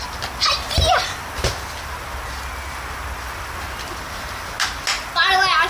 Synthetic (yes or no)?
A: no